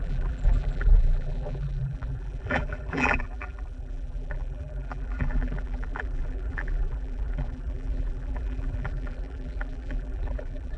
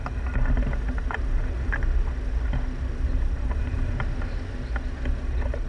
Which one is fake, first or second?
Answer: first